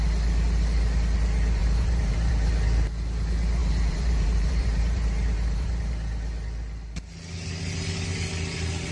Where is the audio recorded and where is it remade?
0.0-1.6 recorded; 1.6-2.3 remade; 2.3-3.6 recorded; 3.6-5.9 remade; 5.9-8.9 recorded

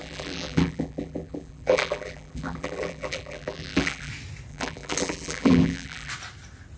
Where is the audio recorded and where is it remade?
0.0-4.1 remade; 4.1-4.5 recorded; 4.5-6.1 remade; 6.1-6.8 recorded

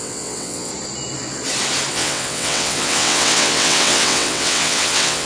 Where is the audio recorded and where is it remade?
0.0-0.7 remade; 0.7-1.9 recorded; 1.9-5.3 remade

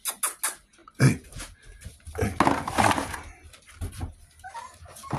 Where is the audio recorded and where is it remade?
0.0-5.2 recorded